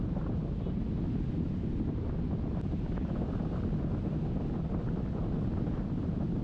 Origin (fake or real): real